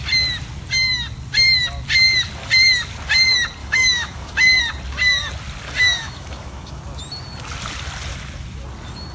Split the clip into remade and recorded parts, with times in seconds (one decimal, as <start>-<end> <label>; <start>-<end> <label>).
0.0-3.6 recorded; 3.6-4.6 remade; 4.6-6.0 recorded; 6.0-6.8 remade; 6.8-9.1 recorded